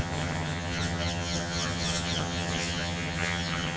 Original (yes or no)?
no